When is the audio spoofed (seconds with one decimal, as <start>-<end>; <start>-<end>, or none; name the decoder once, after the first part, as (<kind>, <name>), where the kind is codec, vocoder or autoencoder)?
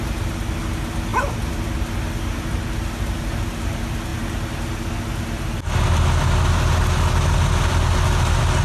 1.1-1.9 (vocoder, BigVGAN v2)